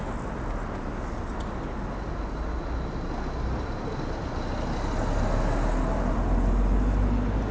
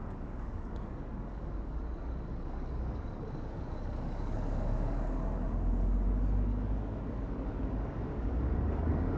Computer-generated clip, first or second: second